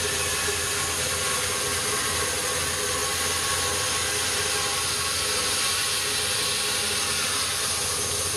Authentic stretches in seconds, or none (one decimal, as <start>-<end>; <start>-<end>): 0.0-8.4